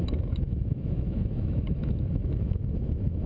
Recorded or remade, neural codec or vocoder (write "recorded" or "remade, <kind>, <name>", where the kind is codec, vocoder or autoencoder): remade, autoencoder, DAC-VAE